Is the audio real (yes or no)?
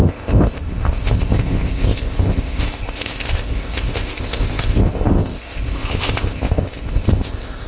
no